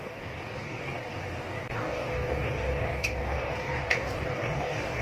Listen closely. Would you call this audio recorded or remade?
remade